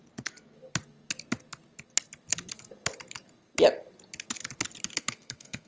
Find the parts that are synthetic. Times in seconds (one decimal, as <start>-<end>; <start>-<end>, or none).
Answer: 4.9-5.7